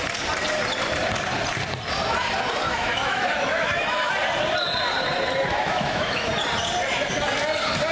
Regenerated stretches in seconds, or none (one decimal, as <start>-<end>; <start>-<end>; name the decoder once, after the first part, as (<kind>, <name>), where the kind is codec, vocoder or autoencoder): 2.6-4.1 (autoencoder, DAC-VAE); 5.5-6.3